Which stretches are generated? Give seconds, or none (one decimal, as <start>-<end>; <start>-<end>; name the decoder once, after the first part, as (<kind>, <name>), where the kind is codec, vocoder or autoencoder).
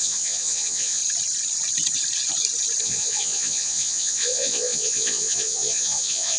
0.0-1.0 (vocoder, Vocos); 2.8-6.4